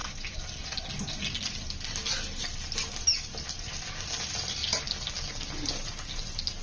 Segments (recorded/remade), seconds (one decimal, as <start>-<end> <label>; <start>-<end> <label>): 0.0-6.6 recorded